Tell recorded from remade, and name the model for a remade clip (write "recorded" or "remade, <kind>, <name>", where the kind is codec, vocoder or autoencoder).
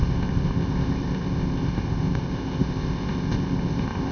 remade, codec, ZipCodec